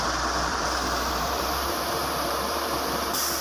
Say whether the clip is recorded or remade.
remade